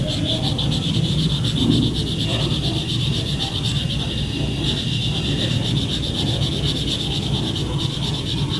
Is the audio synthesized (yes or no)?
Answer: no